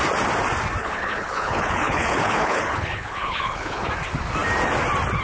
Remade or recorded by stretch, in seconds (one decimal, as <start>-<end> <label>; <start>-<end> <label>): 0.0-0.8 recorded; 0.8-3.9 remade; 3.9-5.2 recorded